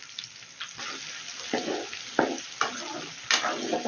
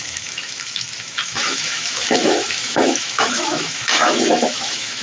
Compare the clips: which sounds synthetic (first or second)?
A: second